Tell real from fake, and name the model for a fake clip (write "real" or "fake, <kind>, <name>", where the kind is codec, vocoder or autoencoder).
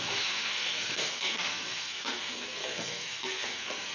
fake, codec, SNAC